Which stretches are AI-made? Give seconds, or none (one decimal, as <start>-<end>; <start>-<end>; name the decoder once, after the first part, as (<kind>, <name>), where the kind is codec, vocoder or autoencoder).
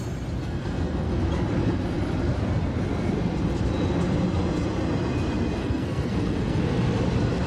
0.4-1.2 (codec, SNAC); 5.6-6.6